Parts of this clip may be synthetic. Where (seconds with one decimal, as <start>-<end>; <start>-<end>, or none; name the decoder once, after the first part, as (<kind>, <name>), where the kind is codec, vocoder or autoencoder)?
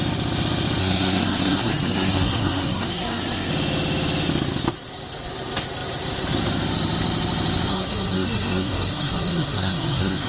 0.8-3.5 (codec, SNAC); 7.7-10.3